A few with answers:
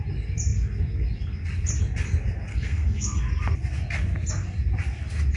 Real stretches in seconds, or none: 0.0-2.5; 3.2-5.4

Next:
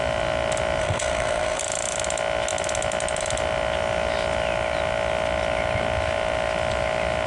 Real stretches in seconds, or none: 0.0-0.8; 1.6-7.3